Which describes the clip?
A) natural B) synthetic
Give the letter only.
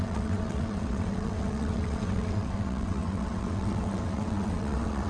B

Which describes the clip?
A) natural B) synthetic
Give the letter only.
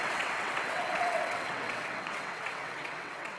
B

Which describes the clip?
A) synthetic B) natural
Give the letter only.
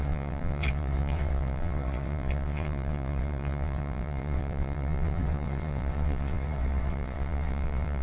A